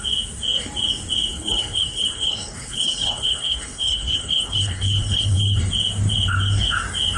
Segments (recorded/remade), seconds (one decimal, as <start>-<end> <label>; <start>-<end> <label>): 0.0-1.3 recorded; 1.3-5.6 remade; 5.6-7.2 recorded